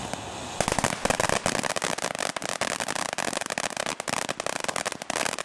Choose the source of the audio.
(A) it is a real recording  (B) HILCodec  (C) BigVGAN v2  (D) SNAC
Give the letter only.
A